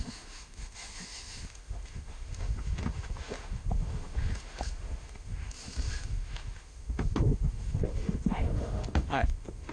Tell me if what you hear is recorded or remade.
remade